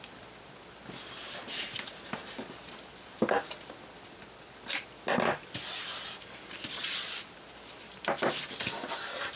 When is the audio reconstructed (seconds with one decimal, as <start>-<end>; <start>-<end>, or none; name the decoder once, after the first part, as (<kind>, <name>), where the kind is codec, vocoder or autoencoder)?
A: 6.7-7.3 (vocoder, Vocos)